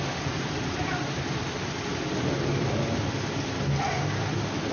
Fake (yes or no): no